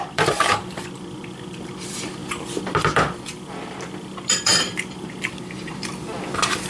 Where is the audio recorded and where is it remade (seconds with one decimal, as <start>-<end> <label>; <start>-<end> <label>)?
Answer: 0.0-6.7 remade